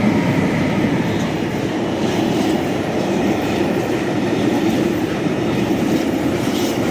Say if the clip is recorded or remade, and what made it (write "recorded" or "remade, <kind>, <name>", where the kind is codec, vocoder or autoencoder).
remade, vocoder, BigVGAN v2